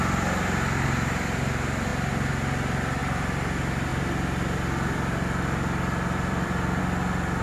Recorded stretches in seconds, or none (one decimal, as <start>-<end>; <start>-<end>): 0.0-3.9; 6.8-7.4